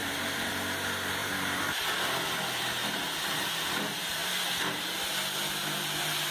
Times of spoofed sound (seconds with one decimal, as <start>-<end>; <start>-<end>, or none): 0.0-0.5; 1.2-1.9